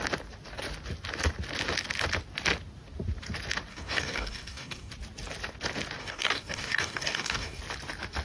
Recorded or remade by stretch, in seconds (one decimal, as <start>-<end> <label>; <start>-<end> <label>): 0.0-3.7 recorded; 3.7-4.9 remade; 4.9-6.0 recorded; 6.0-7.6 remade; 7.6-8.2 recorded